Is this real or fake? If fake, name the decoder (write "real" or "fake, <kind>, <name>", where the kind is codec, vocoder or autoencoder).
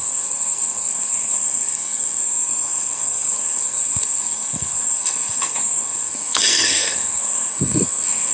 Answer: fake, codec, SNAC